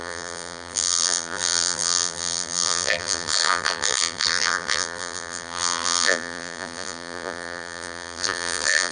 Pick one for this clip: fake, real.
fake